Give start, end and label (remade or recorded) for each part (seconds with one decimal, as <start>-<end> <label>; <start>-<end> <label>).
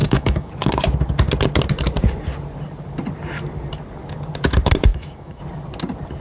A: 0.0-0.5 remade; 0.5-4.9 recorded; 4.9-5.4 remade; 5.4-6.2 recorded